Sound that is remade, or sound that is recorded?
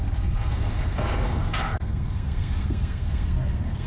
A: remade